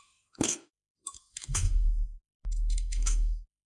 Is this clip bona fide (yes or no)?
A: no